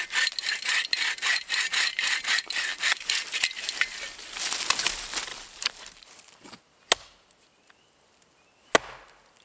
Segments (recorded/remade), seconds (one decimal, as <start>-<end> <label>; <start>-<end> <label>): 0.0-2.7 recorded; 2.7-4.4 remade; 4.4-5.3 recorded; 5.3-6.6 remade; 6.6-9.4 recorded